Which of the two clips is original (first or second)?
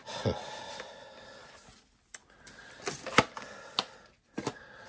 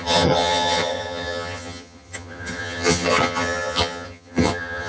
first